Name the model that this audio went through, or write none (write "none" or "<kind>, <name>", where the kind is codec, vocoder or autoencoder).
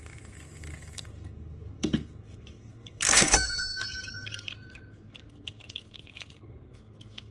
codec, SNAC